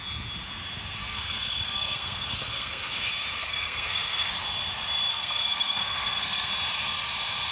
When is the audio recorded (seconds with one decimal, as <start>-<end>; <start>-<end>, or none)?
0.0-1.0; 3.0-3.4; 4.3-5.1; 6.5-7.5